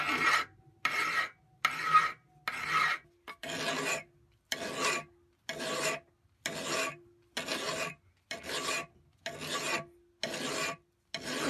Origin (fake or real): real